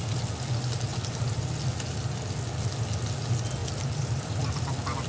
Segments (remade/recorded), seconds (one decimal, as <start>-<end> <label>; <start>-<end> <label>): 0.0-3.6 recorded; 3.6-4.3 remade; 4.3-5.1 recorded